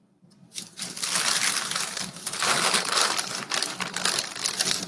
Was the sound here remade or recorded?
remade